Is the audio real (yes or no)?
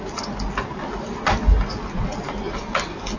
yes